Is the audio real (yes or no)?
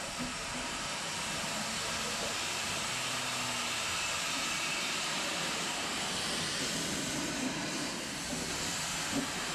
yes